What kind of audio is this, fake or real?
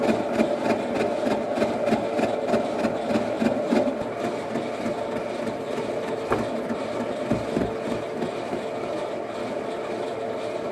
real